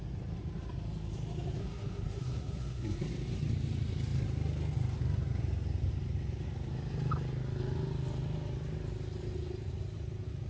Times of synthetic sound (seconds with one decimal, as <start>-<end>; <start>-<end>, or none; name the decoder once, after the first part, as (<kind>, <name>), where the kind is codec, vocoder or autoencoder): 1.6-3.0 (codec, SNAC)